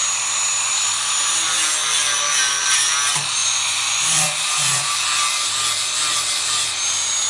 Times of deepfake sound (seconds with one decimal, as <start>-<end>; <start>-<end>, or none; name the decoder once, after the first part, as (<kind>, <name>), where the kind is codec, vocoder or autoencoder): 3.4-4.9 (vocoder, Vocos)